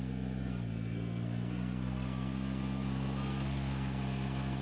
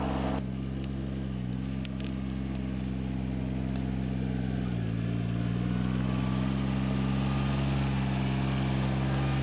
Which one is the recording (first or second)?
second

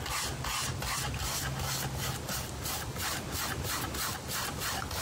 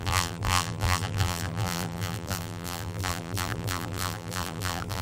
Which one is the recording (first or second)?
first